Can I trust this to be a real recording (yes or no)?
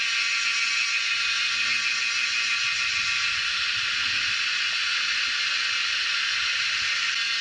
yes